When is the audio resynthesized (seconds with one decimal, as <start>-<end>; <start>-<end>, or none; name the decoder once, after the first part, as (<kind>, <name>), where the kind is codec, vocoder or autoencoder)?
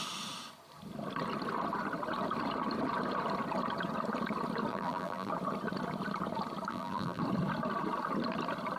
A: 4.7-5.3 (vocoder, BigVGAN v2); 6.7-7.2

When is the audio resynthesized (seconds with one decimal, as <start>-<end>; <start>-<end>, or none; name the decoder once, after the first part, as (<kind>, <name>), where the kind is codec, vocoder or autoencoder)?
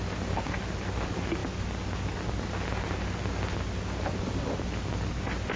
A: none